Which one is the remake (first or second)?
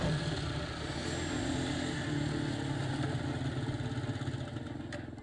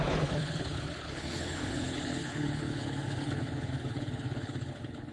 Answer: second